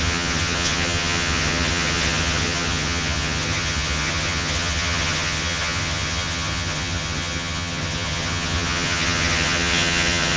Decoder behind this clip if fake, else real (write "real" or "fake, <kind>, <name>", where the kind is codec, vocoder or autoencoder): fake, vocoder, HiFi-GAN